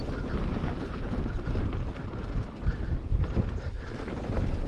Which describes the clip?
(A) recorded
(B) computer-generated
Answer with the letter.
B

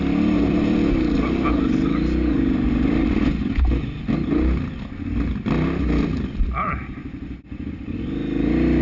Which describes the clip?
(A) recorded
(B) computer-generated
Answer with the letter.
A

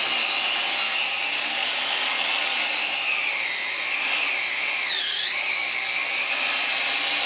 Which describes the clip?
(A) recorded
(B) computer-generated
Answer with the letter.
A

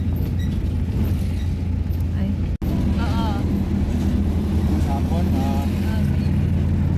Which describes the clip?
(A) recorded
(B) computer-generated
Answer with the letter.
A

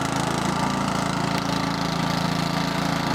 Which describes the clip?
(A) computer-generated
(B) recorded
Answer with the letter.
B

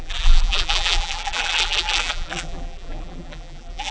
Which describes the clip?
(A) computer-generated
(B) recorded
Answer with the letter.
A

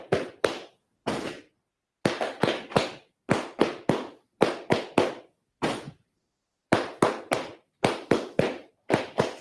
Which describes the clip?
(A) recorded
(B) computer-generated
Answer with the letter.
B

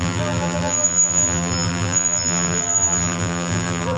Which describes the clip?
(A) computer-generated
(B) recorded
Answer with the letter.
A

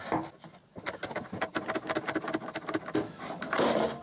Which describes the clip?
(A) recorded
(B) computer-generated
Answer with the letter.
A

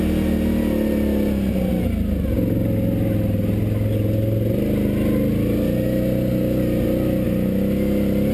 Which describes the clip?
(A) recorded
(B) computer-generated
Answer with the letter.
A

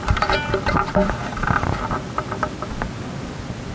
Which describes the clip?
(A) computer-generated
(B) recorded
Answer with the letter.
B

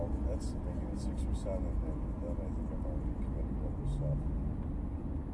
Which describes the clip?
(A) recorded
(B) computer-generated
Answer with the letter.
A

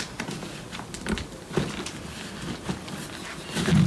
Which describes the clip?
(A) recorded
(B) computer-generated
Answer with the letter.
A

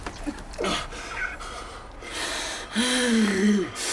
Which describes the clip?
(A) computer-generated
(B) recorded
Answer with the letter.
B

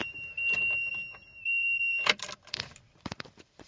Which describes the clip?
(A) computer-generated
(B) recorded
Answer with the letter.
A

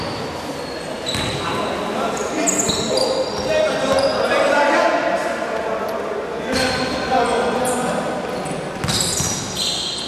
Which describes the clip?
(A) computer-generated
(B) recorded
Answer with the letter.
B